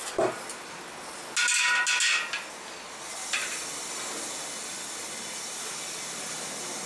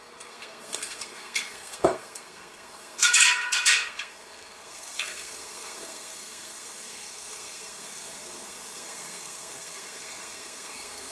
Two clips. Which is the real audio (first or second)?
first